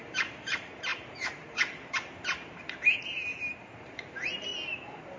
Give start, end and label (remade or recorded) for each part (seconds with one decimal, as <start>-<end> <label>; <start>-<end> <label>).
0.0-4.5 remade; 4.5-5.2 recorded